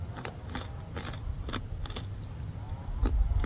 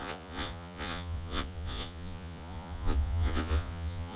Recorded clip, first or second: first